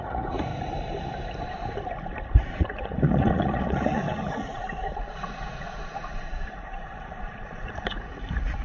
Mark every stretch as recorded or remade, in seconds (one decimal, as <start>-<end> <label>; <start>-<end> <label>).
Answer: 0.0-0.5 remade; 0.5-2.5 recorded; 2.5-8.6 remade